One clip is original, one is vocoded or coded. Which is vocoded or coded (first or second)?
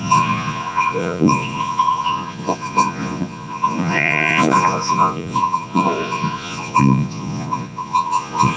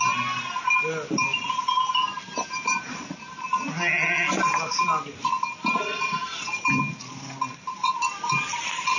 first